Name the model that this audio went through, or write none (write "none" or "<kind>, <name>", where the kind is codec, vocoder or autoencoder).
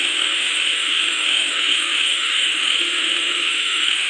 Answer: autoencoder, DAC-VAE